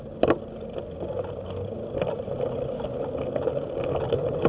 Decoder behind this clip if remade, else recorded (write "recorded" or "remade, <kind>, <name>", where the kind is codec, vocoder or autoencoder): recorded